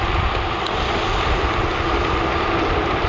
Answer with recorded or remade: recorded